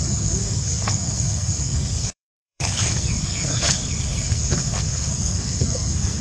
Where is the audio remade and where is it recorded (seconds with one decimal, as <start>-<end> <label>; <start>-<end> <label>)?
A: 0.0-6.2 remade